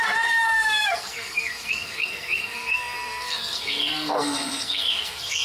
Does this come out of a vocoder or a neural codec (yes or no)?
yes